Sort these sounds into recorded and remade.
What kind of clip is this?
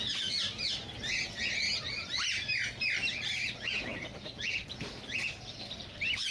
recorded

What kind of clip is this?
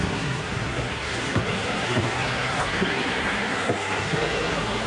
remade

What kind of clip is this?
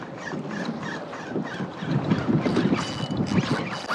recorded